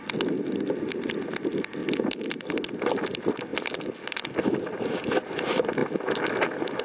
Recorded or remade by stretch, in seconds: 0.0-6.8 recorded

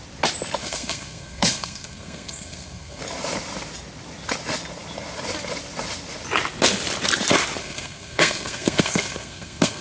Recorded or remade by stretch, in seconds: 0.0-0.6 recorded; 0.6-3.0 remade; 3.0-7.6 recorded; 7.6-9.8 remade